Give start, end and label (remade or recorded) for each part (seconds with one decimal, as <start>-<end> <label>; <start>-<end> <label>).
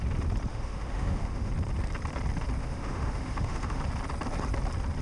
0.0-0.5 recorded; 0.5-1.5 remade; 1.5-2.6 recorded; 2.6-3.8 remade; 3.8-5.0 recorded